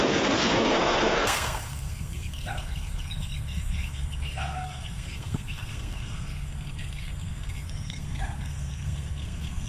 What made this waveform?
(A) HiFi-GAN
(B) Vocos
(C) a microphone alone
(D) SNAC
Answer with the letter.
D